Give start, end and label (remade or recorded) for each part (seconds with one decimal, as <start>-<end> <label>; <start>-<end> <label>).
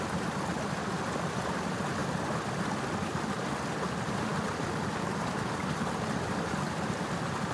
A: 0.0-7.5 recorded